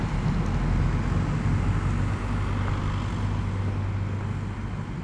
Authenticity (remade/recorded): recorded